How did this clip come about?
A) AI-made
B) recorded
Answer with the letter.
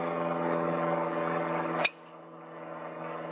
A